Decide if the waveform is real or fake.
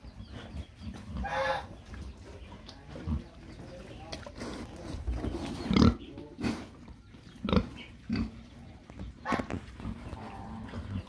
real